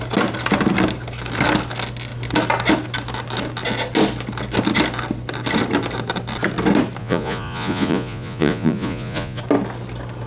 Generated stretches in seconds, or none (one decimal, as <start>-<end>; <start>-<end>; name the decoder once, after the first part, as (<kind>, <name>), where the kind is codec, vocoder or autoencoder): 7.0-9.4 (vocoder, Vocos)